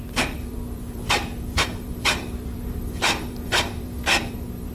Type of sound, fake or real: fake